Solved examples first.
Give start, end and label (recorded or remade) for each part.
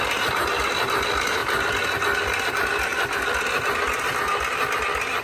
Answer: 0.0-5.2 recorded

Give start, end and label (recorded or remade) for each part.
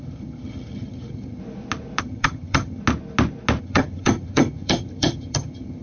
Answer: 0.0-1.4 remade; 1.4-2.0 recorded; 2.0-2.8 remade; 2.8-3.6 recorded; 3.6-5.8 remade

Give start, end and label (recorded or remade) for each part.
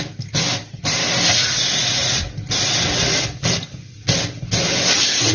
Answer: 0.0-5.3 recorded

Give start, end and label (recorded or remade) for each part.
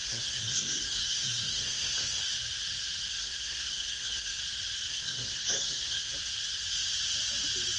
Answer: 0.0-2.2 remade; 2.2-3.1 recorded; 3.1-4.4 remade; 4.4-4.9 recorded; 4.9-6.1 remade; 6.1-7.8 recorded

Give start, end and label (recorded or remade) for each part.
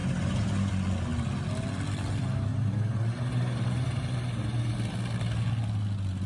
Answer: 0.0-0.7 remade; 0.7-2.5 recorded; 2.5-4.0 remade; 4.0-6.3 recorded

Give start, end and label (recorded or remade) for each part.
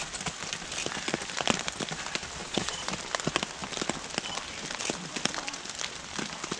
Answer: 0.0-2.4 recorded; 2.4-2.9 remade; 2.9-6.6 recorded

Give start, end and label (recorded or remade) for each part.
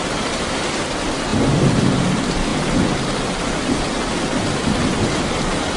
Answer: 0.0-5.8 recorded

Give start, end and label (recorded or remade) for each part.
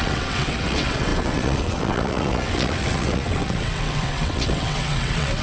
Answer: 0.0-5.4 remade